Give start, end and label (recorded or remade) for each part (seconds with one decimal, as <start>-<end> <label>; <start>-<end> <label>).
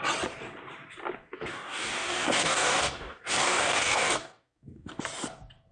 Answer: 0.0-1.5 recorded; 1.5-4.9 remade; 4.9-5.7 recorded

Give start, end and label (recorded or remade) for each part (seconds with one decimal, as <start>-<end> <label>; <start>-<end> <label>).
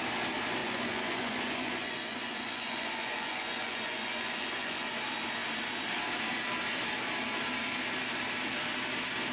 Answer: 0.0-0.6 recorded; 0.6-5.0 remade; 5.0-9.3 recorded